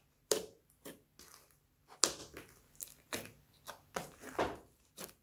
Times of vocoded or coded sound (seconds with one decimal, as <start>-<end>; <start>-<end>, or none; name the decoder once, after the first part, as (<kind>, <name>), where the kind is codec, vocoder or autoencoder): none